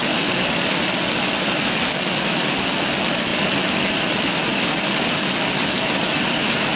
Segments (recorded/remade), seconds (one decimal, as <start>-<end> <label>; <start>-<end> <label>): 0.0-1.1 remade; 1.1-6.7 recorded